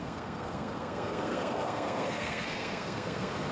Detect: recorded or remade remade